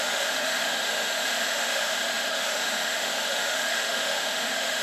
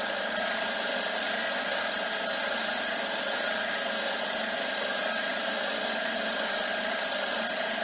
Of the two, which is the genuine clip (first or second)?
second